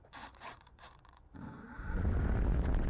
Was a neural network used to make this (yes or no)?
yes